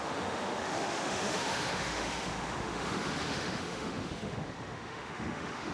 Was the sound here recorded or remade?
remade